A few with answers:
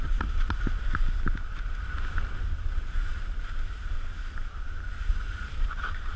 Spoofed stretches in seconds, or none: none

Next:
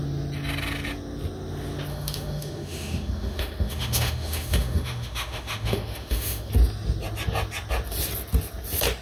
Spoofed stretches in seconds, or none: 1.9-6.5 (autoencoder, DAC-VAE)

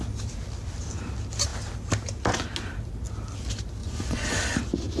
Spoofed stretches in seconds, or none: 3.8-4.4 (vocoder, Vocos)

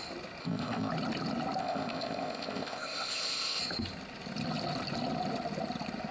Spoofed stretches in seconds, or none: 0.4-0.9 (codec, ZipCodec); 1.6-3.6

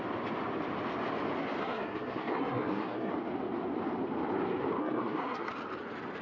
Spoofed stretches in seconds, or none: 1.6-3.1 (codec, SNAC); 4.8-5.5

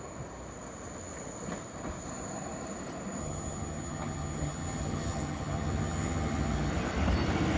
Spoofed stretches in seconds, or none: 3.2-6.7 (vocoder, HiFi-GAN)

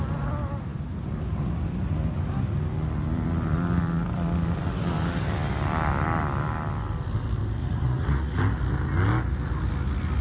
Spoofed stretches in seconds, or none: 7.6-8.4 (vocoder, Vocos)

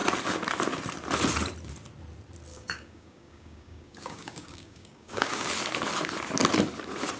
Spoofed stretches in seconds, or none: 2.5-5.5 (codec, DAC)